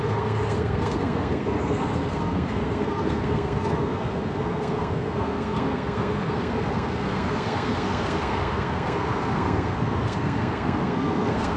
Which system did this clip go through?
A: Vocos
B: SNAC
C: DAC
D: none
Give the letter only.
B